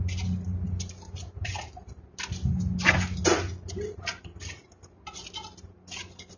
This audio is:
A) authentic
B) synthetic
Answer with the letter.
A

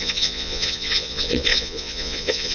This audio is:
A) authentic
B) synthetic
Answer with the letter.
B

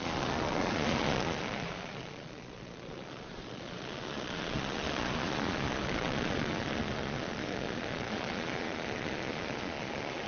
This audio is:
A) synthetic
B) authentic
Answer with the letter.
A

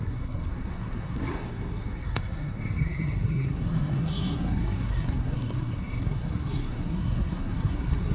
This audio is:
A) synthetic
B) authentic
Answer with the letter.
A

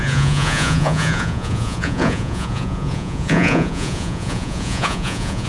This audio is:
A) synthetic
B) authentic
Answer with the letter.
A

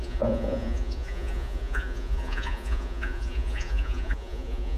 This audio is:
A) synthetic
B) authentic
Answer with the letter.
A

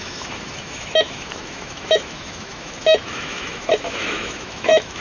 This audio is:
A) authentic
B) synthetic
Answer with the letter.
B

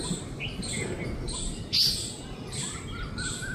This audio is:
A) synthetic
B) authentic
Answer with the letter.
B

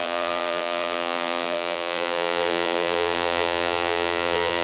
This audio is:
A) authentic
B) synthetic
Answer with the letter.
B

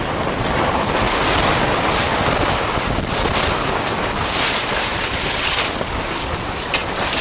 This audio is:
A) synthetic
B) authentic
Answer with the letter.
B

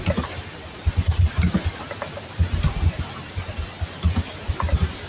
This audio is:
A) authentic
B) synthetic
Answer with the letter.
B